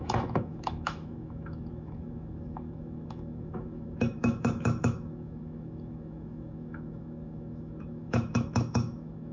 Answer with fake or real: fake